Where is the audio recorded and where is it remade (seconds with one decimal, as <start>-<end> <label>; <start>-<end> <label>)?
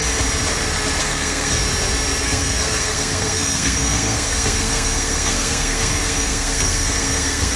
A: 0.0-1.0 recorded; 1.0-1.6 remade; 1.6-2.2 recorded; 2.2-7.6 remade